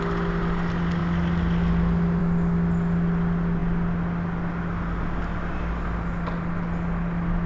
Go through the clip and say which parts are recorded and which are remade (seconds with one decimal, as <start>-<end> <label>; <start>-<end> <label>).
0.0-7.5 recorded